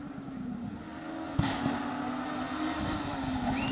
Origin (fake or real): real